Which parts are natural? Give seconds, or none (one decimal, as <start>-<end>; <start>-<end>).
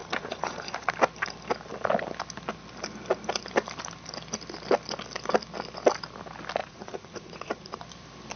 0.9-6.6; 7.8-8.4